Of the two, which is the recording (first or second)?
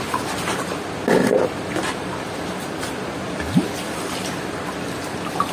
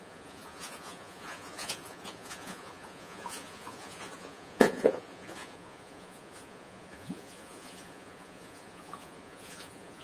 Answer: first